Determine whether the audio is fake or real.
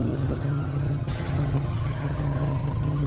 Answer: fake